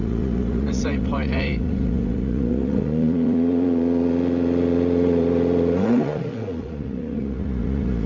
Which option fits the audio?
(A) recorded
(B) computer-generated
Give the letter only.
B